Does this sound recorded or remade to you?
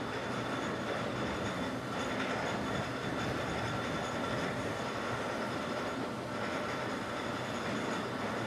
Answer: recorded